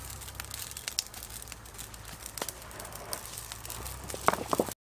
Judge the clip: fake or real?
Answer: real